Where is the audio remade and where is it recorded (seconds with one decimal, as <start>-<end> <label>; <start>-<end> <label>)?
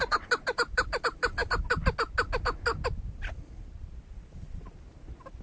0.0-1.4 remade; 1.4-3.5 recorded; 3.5-5.4 remade